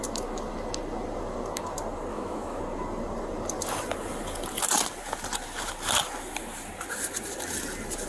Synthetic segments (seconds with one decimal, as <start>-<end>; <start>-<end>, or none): 2.1-2.6